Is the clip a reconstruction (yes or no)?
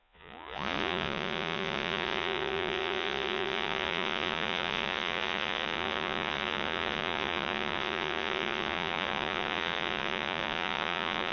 yes